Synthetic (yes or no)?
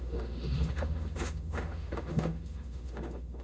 yes